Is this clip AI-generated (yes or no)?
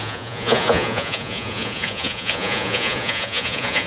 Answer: yes